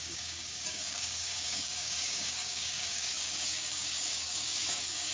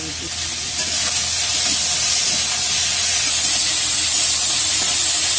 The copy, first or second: first